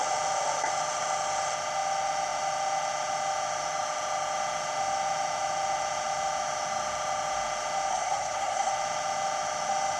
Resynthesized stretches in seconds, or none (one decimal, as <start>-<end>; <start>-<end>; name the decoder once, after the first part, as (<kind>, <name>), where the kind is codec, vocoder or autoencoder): 7.9-8.7 (codec, SNAC)